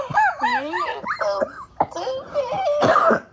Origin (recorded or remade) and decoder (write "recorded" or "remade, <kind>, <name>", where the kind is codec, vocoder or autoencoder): remade, vocoder, BigVGAN v2